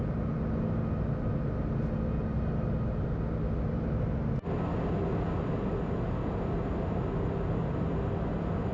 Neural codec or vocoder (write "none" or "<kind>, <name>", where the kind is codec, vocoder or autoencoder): none